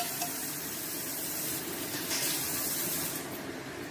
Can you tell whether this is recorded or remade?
recorded